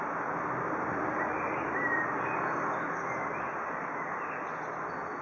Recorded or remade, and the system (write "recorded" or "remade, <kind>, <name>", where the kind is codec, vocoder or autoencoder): recorded